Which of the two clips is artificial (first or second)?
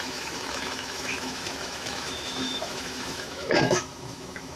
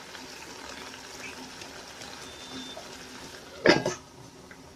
first